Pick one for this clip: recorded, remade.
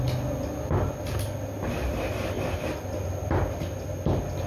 recorded